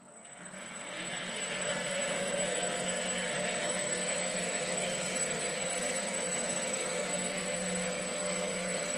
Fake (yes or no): yes